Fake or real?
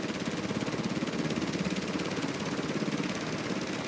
real